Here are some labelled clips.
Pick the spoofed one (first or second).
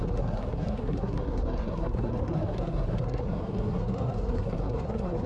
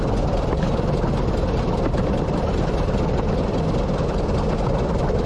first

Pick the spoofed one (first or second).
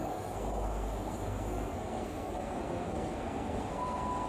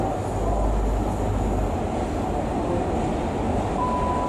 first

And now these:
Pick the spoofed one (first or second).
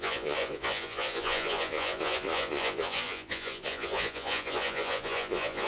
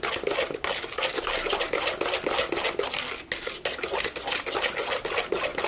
first